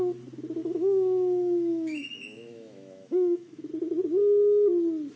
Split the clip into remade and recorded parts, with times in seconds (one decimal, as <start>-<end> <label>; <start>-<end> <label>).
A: 0.0-0.6 recorded; 0.6-3.7 remade; 3.7-5.2 recorded